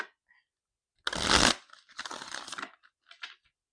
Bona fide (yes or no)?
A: yes